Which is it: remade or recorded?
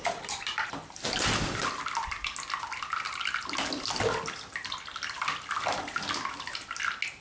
recorded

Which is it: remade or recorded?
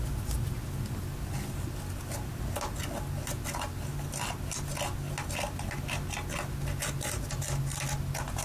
recorded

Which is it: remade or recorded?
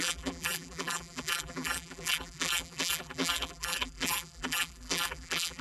remade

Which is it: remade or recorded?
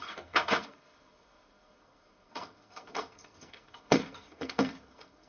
remade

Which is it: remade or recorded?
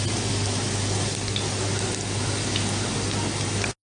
recorded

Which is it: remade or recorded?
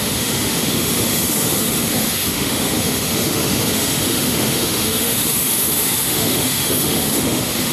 remade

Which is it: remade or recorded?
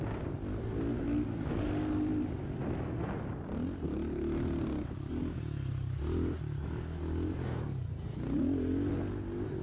recorded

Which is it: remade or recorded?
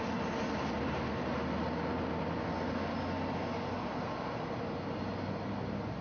recorded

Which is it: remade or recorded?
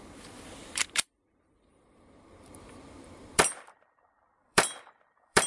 remade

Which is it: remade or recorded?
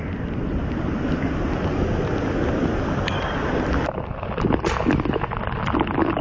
recorded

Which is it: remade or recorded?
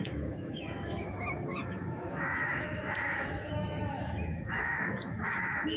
remade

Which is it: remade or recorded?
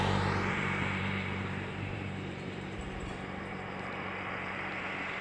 remade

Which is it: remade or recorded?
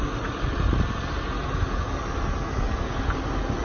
recorded